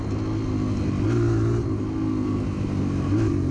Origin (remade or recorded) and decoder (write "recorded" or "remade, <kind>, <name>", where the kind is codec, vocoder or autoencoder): recorded